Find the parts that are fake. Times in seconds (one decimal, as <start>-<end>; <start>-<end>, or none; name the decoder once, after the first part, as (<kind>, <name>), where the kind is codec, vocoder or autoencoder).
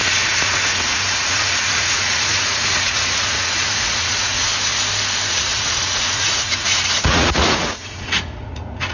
0.0-4.5 (vocoder, Vocos); 5.3-8.9